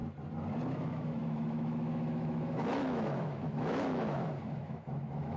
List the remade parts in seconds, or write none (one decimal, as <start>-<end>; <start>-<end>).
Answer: 0.7-5.4